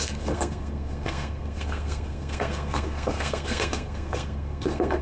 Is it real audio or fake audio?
fake